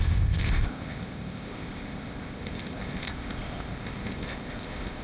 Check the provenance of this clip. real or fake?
fake